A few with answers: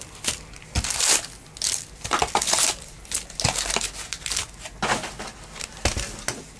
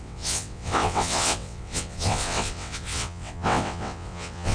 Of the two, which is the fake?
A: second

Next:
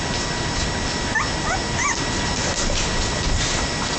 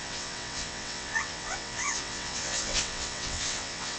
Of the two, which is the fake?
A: second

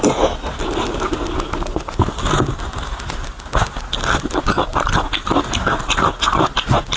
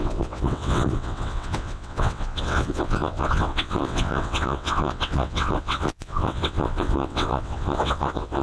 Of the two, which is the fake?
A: second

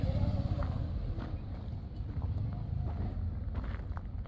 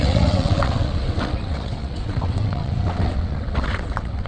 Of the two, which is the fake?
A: second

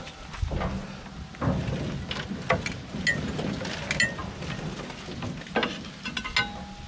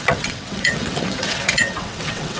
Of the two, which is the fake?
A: second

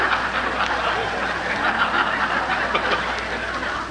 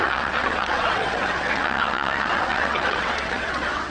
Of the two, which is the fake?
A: second